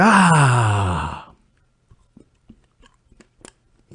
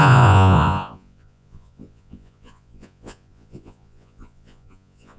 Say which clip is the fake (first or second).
second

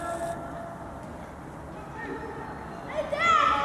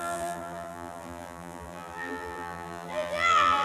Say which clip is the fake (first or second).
second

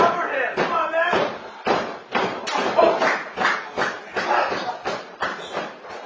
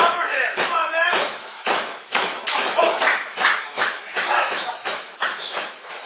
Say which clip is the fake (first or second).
second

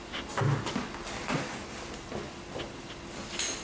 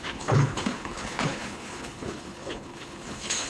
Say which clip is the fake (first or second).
second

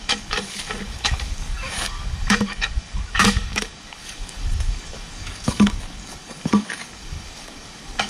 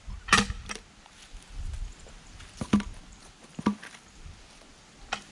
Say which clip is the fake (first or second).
first